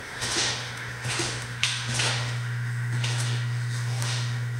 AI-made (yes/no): yes